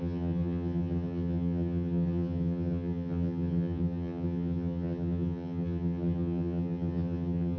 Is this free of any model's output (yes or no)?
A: no